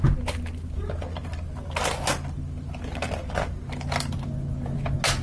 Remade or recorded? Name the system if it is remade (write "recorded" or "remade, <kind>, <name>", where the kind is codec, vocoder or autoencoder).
recorded